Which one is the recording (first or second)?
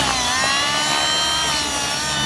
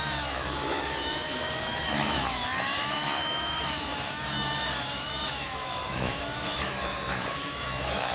first